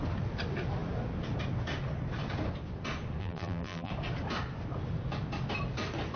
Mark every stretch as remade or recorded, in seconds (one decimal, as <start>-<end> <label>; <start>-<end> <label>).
0.0-3.2 recorded; 3.2-3.9 remade; 3.9-6.2 recorded